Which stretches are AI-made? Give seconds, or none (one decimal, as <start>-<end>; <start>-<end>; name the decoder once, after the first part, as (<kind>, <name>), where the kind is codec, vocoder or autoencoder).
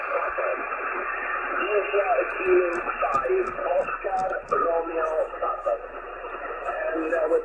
none